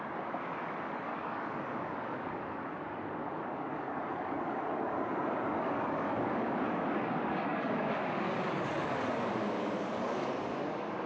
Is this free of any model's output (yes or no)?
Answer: no